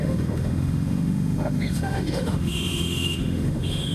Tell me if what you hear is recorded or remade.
remade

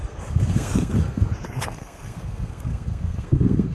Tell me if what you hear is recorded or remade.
remade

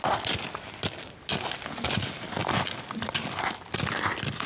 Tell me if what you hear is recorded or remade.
recorded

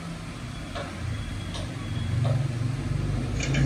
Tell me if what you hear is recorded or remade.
recorded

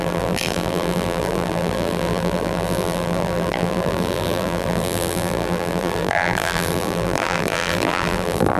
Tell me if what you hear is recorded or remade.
remade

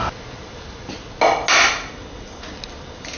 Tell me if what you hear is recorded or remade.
recorded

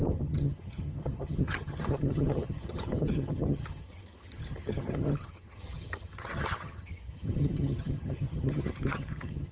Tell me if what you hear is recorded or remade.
remade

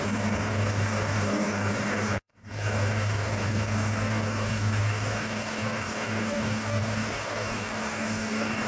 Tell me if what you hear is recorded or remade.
remade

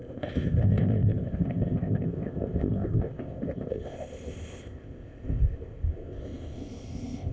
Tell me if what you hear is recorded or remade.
remade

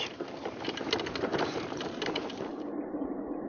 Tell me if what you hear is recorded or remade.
remade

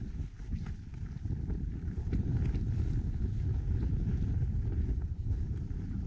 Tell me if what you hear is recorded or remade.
recorded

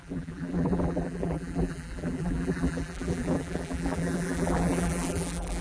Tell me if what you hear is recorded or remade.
remade